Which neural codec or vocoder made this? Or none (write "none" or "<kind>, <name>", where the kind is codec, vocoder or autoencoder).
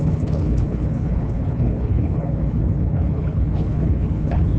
codec, HILCodec